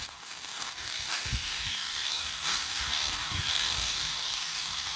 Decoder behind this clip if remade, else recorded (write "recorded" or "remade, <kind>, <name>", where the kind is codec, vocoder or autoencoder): remade, codec, DAC